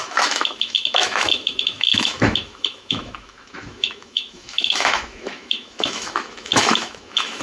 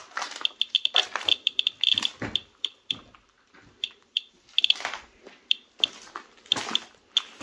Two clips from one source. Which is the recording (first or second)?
second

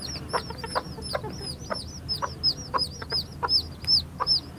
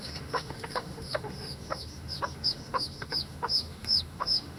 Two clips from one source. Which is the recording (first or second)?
first